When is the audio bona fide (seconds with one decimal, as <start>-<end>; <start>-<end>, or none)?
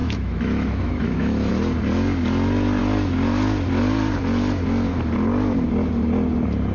1.5-6.7